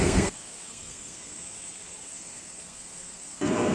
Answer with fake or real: fake